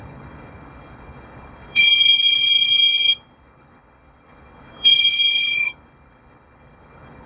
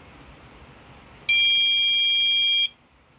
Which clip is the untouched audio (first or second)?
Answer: second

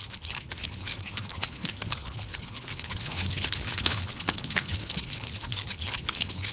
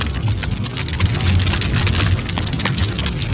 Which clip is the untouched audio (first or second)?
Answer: second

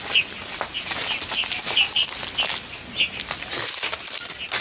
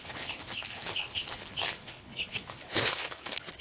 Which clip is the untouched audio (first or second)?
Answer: first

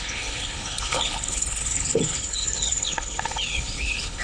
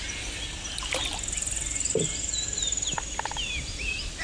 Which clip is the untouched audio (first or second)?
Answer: second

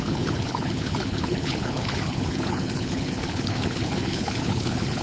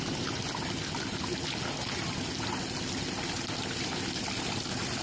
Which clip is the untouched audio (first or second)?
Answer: second